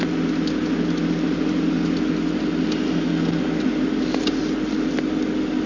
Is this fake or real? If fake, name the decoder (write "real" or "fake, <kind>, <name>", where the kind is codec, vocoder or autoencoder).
real